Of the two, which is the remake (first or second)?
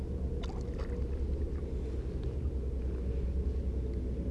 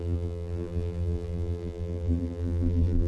second